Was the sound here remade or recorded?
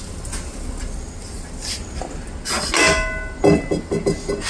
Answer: recorded